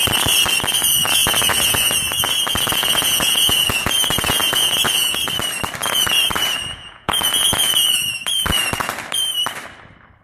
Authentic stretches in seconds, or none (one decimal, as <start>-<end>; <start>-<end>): 0.0-1.0; 5.3-5.8; 8.9-10.2